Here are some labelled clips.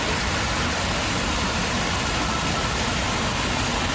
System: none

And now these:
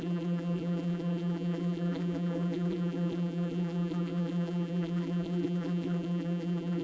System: vocoder, BigVGAN v2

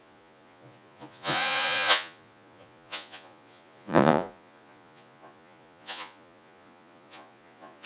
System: vocoder, Vocos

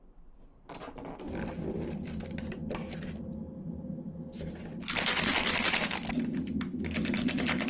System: none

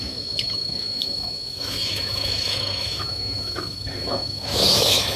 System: autoencoder, DAC-VAE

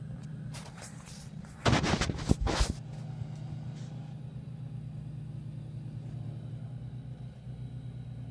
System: none